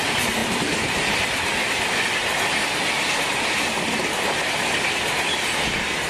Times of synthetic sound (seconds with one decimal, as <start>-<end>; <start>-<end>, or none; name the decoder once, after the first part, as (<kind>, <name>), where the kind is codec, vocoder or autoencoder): none